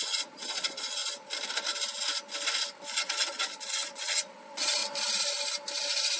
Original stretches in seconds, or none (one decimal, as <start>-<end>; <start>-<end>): 1.0-2.9; 4.8-6.2